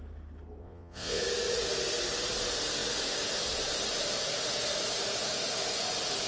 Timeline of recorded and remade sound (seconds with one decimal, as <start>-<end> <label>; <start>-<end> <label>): 0.0-0.6 recorded; 0.6-1.2 remade; 1.2-6.3 recorded